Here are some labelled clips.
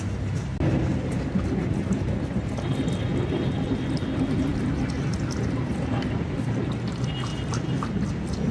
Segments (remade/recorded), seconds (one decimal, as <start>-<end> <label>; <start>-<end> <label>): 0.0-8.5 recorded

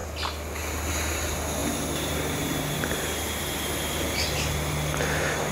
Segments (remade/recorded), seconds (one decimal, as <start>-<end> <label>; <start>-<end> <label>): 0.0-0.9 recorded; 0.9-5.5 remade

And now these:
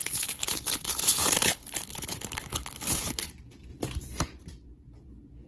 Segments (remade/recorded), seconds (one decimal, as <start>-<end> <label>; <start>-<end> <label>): 0.0-3.3 remade; 3.3-5.5 recorded